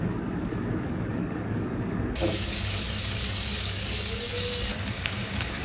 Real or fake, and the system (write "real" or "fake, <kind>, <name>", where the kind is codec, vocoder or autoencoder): fake, codec, DAC